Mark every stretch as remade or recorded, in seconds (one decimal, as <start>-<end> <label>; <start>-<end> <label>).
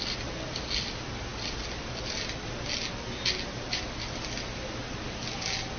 0.0-5.8 recorded